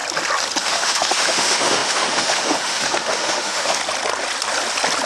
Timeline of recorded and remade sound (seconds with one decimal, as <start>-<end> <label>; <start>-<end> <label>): 0.0-0.6 recorded; 0.6-3.8 remade; 3.8-5.1 recorded